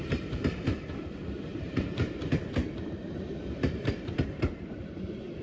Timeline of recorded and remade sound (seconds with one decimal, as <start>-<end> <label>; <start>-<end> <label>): 0.0-5.4 remade